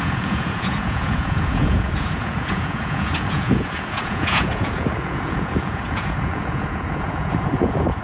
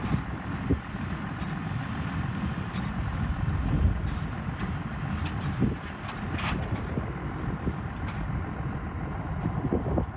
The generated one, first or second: first